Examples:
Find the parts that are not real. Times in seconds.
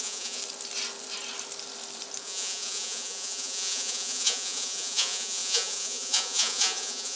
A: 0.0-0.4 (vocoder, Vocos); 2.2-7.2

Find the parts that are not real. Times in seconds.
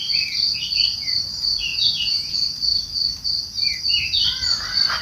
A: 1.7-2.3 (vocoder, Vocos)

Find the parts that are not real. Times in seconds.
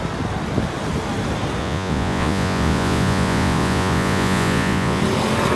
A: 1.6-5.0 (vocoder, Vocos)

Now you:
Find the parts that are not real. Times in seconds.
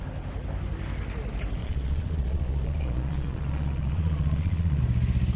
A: 1.6-4.8 (vocoder, Vocos)